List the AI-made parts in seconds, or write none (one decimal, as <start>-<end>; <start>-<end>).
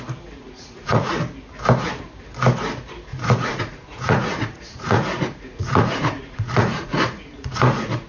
0.4-1.1; 3.1-8.1